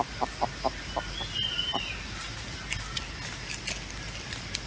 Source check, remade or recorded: recorded